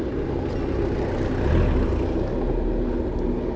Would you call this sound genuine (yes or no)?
yes